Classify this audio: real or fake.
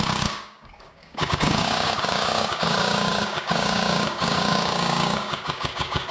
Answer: fake